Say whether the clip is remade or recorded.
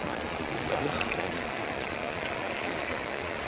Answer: remade